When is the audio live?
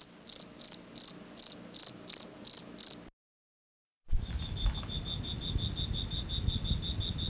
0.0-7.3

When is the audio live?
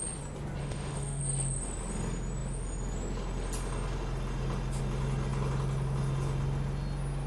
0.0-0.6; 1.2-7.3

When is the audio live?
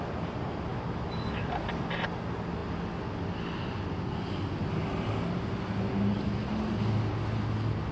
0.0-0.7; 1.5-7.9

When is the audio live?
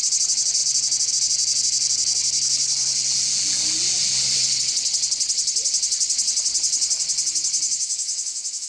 0.0-7.8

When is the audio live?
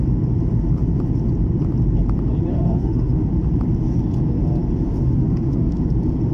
0.0-2.5; 3.3-5.0; 5.7-6.3